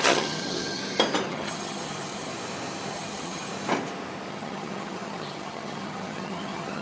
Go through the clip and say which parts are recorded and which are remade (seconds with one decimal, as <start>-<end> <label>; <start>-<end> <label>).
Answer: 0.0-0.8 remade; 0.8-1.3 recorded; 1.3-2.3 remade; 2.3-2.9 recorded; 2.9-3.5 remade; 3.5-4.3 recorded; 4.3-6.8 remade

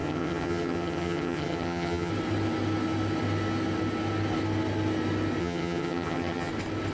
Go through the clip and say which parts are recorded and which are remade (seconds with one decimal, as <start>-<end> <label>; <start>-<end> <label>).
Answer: 0.0-2.1 remade; 2.1-5.4 recorded; 5.4-6.5 remade; 6.5-6.9 recorded

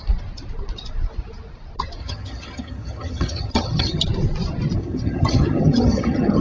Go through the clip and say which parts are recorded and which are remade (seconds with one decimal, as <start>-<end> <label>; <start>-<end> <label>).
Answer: 0.0-2.0 recorded; 2.0-4.0 remade; 4.0-4.8 recorded; 4.8-6.4 remade

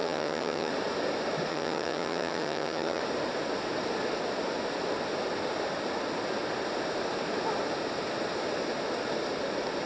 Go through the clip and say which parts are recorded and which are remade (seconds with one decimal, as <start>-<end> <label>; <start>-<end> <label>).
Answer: 0.0-0.7 remade; 0.7-1.5 recorded; 1.5-3.0 remade; 3.0-9.9 recorded

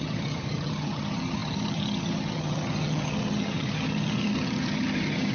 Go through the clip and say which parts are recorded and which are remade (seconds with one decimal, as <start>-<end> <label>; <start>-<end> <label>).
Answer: 0.0-5.3 remade

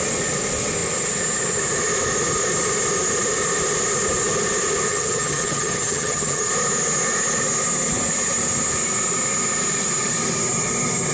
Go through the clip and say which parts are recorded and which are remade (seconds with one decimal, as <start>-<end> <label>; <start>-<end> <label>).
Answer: 0.0-4.9 recorded; 4.9-6.5 remade; 6.5-11.1 recorded

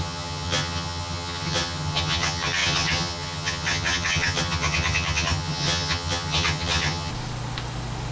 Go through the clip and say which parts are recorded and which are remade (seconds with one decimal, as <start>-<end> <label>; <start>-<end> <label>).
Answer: 0.0-7.1 remade; 7.1-8.1 recorded

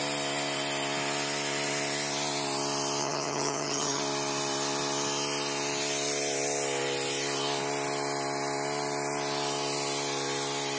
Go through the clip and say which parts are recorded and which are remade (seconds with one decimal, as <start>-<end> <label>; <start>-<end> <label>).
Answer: 0.0-3.0 recorded; 3.0-4.0 remade; 4.0-10.8 recorded